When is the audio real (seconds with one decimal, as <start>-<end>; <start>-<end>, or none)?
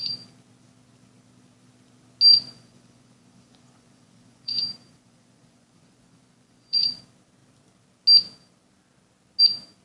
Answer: 0.0-2.3; 7.0-9.8